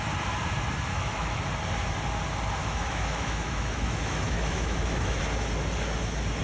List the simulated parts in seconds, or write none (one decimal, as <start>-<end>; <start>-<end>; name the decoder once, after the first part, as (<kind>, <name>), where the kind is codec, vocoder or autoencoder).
0.9-1.4 (autoencoder, DAC-VAE); 2.6-5.2